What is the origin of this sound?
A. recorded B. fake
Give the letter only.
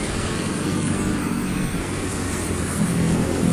B